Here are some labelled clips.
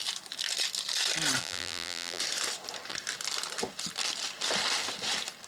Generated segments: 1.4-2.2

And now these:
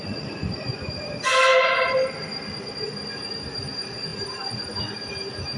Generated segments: 0.0-0.9

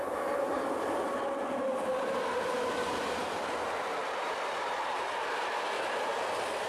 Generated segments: 4.0-6.1

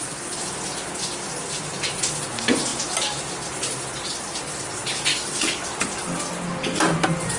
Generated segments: 5.1-5.7